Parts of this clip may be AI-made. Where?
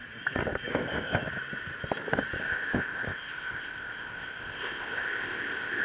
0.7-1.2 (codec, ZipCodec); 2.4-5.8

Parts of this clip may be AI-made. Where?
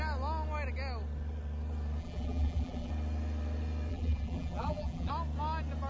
2.0-2.9 (vocoder, BigVGAN v2); 3.9-5.1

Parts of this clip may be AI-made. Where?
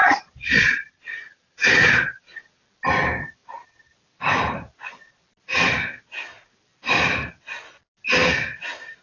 0.0-2.6 (vocoder, Vocos)